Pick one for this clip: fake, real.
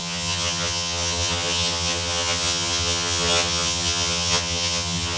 fake